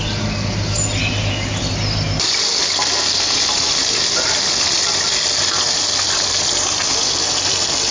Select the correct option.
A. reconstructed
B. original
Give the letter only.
B